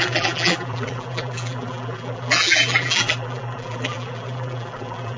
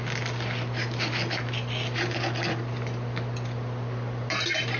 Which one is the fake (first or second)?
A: first